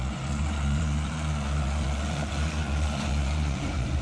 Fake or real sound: fake